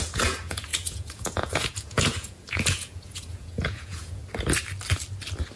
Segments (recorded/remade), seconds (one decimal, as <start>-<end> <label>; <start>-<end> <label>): 0.0-4.2 remade; 4.2-5.6 recorded